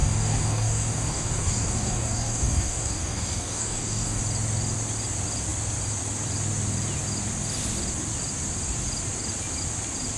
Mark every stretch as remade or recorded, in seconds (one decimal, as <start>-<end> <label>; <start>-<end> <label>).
0.0-4.2 remade; 4.2-10.2 recorded